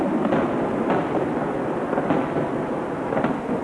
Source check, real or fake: real